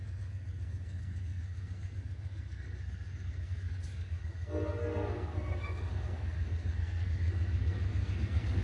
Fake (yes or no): yes